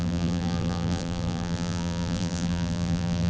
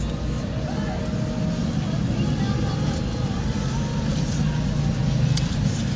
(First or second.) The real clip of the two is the second